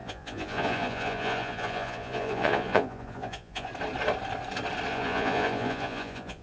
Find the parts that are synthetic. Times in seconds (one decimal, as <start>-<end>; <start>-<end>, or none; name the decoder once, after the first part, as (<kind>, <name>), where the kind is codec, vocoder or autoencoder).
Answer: 0.0-3.7 (vocoder, Vocos); 4.9-6.4